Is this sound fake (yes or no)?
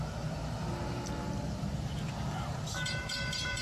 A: yes